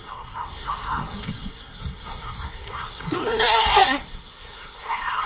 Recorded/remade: remade